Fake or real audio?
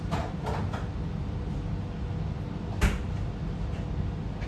real